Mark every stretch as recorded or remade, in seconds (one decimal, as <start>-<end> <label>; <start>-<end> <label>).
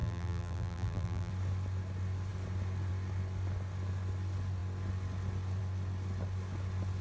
0.0-1.3 remade; 1.3-7.0 recorded